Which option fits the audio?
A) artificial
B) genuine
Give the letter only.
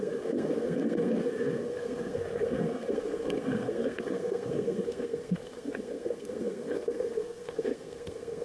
A